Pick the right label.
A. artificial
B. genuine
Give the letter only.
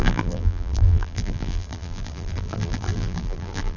A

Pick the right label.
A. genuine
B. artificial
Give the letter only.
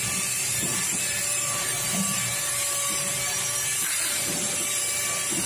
B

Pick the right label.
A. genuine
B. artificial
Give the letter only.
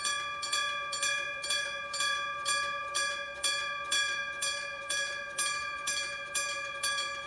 B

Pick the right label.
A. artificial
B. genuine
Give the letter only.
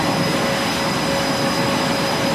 B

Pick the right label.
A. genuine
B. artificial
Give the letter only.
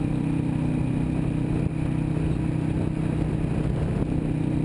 A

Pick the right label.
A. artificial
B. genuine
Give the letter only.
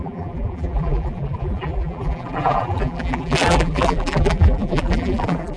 A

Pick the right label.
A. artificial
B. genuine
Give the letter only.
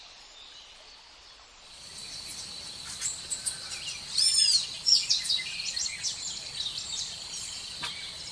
B